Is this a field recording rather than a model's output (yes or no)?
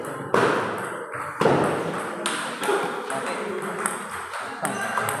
yes